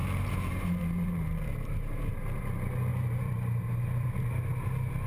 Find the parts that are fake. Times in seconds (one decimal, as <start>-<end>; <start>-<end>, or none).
0.0-2.4; 2.9-4.1